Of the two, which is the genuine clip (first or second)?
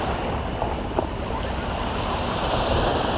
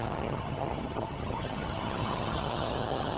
first